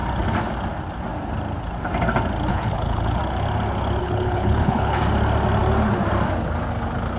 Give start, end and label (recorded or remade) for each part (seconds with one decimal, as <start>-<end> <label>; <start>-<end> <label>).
0.0-2.5 recorded; 2.5-3.2 remade; 3.2-4.0 recorded; 4.0-5.0 remade; 5.0-7.2 recorded